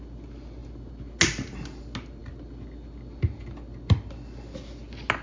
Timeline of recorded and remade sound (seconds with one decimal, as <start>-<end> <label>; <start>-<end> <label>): 0.0-5.2 recorded